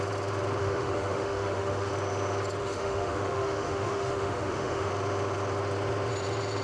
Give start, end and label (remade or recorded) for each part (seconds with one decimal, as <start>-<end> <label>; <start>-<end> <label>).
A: 0.0-0.6 recorded; 0.6-1.9 remade; 1.9-2.6 recorded; 2.6-4.9 remade; 4.9-6.6 recorded